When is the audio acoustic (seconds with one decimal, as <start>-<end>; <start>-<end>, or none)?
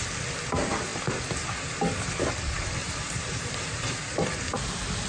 0.0-2.8; 3.8-5.1